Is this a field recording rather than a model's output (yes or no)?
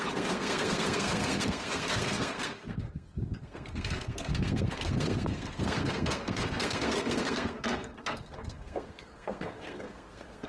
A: no